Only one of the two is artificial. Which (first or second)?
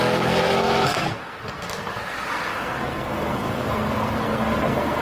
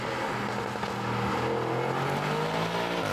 first